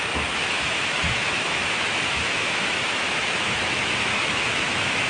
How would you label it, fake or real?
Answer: fake